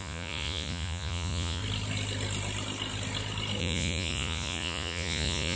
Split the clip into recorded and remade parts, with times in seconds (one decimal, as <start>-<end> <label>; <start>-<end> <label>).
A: 0.0-1.6 remade; 1.6-3.6 recorded; 3.6-5.6 remade